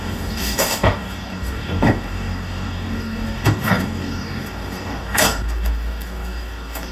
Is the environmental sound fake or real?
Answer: fake